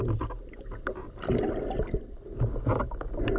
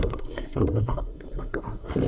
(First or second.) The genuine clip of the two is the first